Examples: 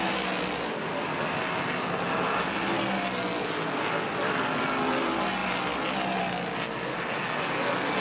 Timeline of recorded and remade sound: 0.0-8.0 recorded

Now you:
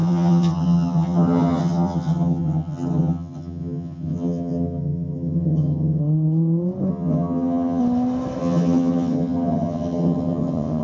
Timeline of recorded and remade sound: 0.0-6.0 remade; 6.0-6.9 recorded; 6.9-7.8 remade; 7.8-8.4 recorded; 8.4-10.8 remade

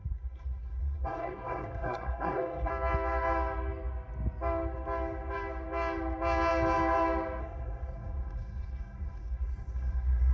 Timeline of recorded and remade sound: 0.0-2.7 remade; 2.7-7.4 recorded; 7.4-10.3 remade

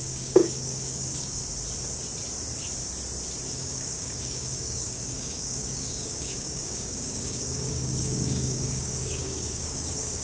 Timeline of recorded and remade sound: 0.0-1.4 remade; 1.4-3.5 recorded; 3.5-10.2 remade